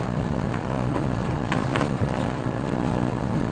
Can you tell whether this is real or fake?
fake